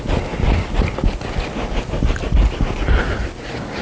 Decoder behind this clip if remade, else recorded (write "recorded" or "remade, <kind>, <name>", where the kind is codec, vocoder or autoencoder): recorded